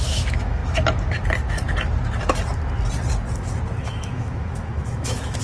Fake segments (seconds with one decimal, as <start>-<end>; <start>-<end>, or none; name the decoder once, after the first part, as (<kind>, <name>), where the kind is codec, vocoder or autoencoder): 0.0-0.6 (autoencoder, DAC-VAE); 3.8-5.4